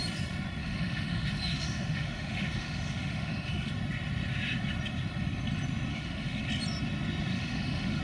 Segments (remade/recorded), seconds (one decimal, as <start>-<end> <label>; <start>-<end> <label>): 0.0-0.6 recorded; 0.6-3.7 remade; 3.7-5.9 recorded; 5.9-6.4 remade; 6.4-7.3 recorded; 7.3-8.0 remade